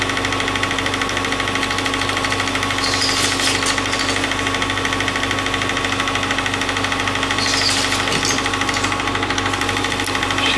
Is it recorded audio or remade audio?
recorded